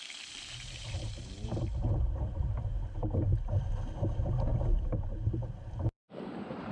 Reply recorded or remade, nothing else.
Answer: remade